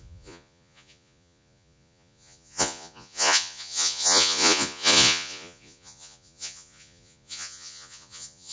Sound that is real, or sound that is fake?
fake